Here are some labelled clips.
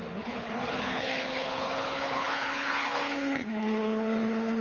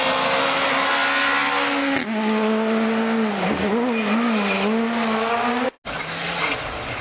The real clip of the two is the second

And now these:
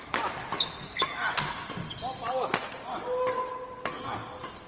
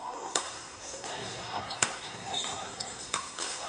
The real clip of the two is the first